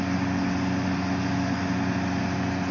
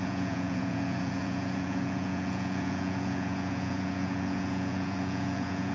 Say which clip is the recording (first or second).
first